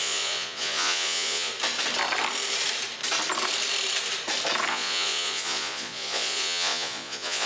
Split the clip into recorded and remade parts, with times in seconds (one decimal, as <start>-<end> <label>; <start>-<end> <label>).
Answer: 0.0-1.5 remade; 1.5-4.7 recorded; 4.7-7.5 remade